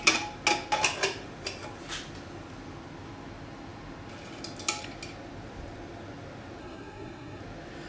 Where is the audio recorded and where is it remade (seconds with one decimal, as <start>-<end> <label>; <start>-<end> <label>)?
0.0-6.6 recorded; 6.6-7.4 remade; 7.4-7.9 recorded